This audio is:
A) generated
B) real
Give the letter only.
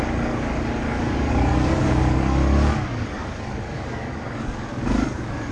A